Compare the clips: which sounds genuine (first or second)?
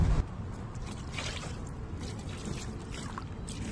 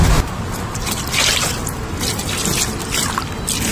second